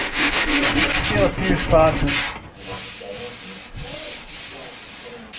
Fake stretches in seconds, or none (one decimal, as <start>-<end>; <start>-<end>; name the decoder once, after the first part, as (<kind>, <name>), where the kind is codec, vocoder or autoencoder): 0.0-0.6 (autoencoder, DAC-VAE)